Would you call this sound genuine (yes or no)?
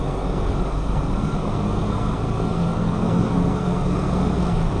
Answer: no